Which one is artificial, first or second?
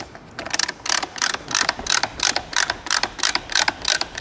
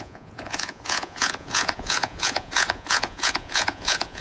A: second